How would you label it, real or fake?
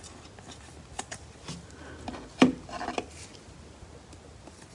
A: real